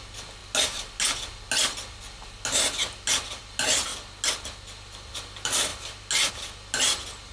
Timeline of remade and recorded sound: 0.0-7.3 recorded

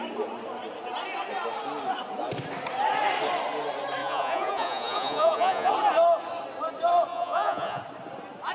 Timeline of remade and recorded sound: 0.0-4.0 recorded; 4.0-5.7 remade; 5.7-7.1 recorded; 7.1-7.8 remade; 7.8-8.5 recorded